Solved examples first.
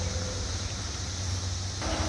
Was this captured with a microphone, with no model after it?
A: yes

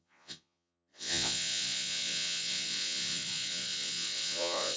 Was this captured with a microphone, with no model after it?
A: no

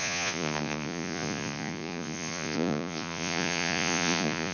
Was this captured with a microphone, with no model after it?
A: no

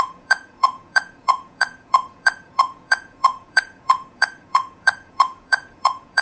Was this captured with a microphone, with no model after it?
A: no